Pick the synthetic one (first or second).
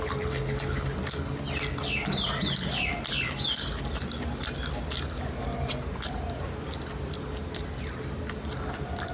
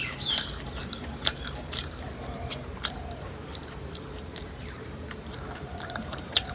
second